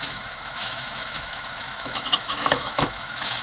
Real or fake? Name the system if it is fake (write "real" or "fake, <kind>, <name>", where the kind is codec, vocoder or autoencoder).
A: fake, autoencoder, DAC-VAE